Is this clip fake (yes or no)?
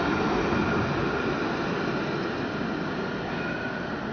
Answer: no